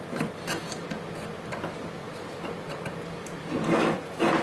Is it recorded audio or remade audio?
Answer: remade